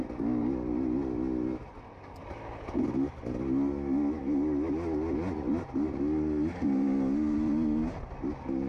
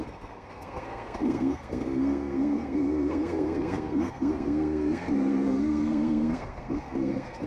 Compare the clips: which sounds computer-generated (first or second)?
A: second